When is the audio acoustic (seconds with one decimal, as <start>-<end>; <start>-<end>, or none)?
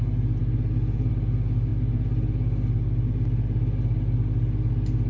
0.0-5.1